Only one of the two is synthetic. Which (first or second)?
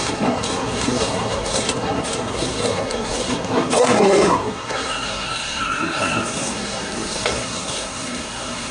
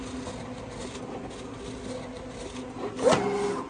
first